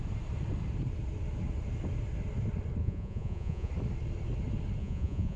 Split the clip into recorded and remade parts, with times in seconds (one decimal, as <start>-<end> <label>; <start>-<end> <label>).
0.0-2.8 recorded; 2.8-3.7 remade; 3.7-4.8 recorded; 4.8-5.4 remade